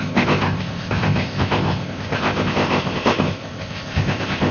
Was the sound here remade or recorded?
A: remade